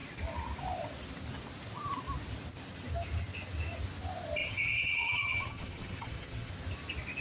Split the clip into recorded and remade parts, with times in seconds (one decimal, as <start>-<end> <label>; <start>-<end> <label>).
0.0-4.4 recorded; 4.4-6.5 remade; 6.5-7.2 recorded